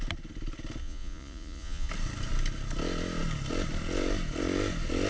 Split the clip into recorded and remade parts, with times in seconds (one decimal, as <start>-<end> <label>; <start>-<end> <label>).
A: 0.0-0.8 recorded; 0.8-1.9 remade; 1.9-5.1 recorded